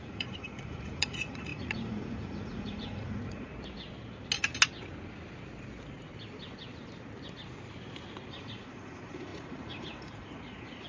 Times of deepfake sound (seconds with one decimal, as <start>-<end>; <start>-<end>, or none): 0.0-3.5; 8.3-10.9